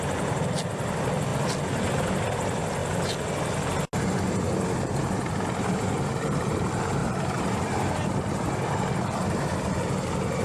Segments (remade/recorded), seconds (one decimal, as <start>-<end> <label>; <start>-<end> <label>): 0.0-1.3 recorded; 1.3-1.9 remade; 1.9-7.0 recorded; 7.0-8.1 remade; 8.1-10.4 recorded

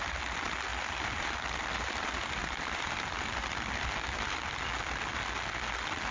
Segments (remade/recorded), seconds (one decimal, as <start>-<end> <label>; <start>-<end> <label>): 0.0-0.7 recorded; 0.7-4.4 remade; 4.4-6.1 recorded

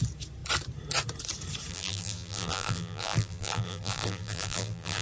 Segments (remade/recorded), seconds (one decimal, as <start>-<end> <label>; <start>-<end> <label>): 0.0-1.7 recorded; 1.7-5.0 remade

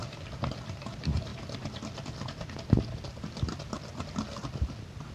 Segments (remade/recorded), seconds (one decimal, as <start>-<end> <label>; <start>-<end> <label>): 0.0-5.1 recorded

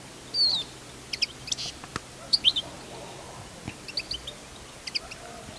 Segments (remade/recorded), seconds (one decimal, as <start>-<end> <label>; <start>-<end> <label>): 0.0-5.6 recorded

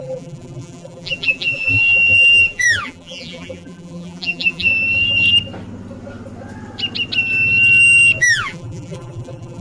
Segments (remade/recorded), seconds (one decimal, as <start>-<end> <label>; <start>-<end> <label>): 0.0-4.7 remade; 4.7-8.2 recorded; 8.2-9.6 remade